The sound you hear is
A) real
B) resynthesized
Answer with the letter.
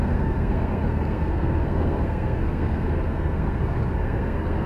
B